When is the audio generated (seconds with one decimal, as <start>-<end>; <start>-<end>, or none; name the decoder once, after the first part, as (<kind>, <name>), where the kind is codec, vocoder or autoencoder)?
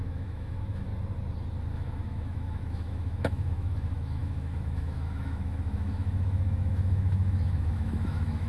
0.0-0.9 (autoencoder, DAC-VAE); 1.7-8.5